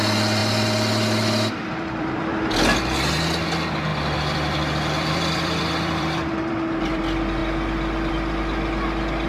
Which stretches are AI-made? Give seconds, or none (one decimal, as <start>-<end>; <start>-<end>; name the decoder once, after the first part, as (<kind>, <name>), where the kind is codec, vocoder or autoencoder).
0.4-2.5 (vocoder, BigVGAN v2); 3.9-7.0